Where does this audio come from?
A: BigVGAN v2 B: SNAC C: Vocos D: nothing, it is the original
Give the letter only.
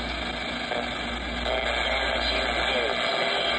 D